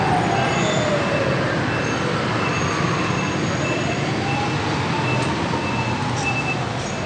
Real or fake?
real